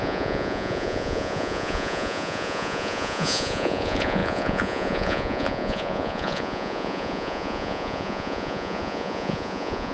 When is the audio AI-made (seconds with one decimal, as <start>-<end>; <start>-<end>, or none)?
0.0-9.9